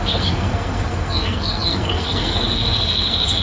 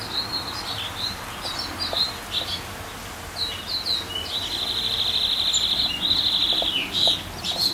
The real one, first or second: second